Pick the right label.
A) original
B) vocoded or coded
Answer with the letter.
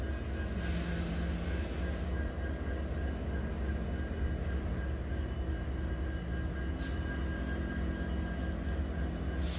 A